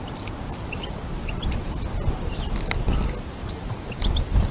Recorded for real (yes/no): yes